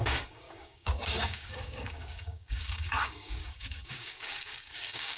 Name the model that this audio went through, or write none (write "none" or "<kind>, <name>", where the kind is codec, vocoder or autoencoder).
codec, DAC